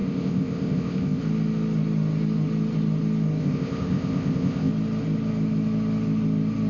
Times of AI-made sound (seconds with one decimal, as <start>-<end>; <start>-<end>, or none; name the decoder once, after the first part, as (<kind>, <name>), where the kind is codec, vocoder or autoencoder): 0.0-1.2 (codec, ZipCodec); 3.4-4.7